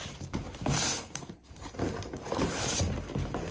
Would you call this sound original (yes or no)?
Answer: no